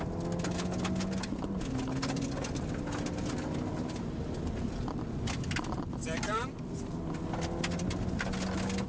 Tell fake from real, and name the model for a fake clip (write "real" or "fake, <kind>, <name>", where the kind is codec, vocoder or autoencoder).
real